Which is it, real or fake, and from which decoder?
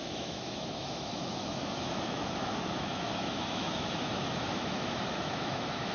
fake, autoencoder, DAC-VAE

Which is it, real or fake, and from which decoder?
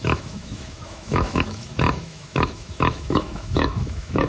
fake, autoencoder, DAC-VAE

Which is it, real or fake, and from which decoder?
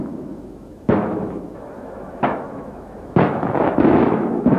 fake, autoencoder, DAC-VAE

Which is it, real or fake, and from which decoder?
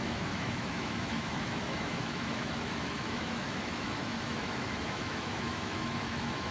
fake, autoencoder, DAC-VAE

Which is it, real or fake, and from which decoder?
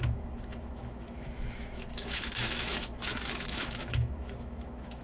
fake, autoencoder, DAC-VAE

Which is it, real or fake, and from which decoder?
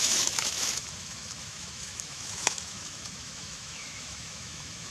fake, autoencoder, DAC-VAE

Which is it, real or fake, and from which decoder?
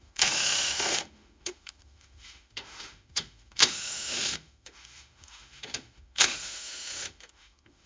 fake, autoencoder, DAC-VAE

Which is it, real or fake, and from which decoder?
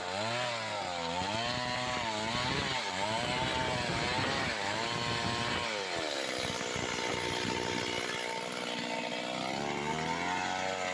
real